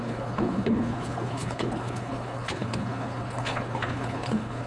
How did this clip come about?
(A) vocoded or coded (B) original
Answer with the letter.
A